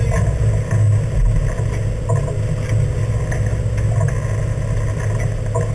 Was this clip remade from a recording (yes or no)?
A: no